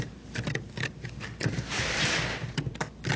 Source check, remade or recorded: remade